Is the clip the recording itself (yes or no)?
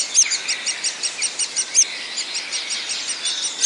yes